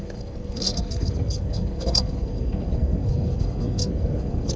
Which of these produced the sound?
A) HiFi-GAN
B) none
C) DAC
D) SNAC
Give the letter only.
D